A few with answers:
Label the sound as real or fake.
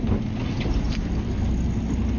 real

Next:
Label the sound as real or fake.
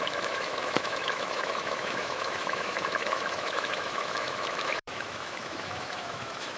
fake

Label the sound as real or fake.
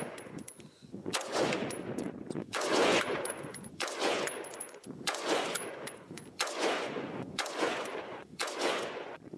fake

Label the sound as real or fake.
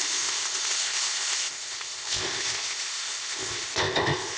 fake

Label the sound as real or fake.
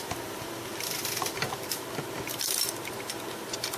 real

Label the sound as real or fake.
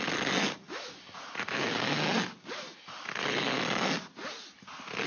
real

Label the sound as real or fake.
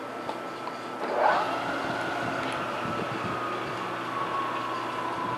real